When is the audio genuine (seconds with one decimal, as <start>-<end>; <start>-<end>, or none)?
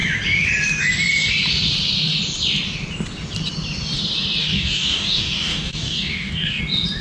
0.0-4.4; 6.6-7.0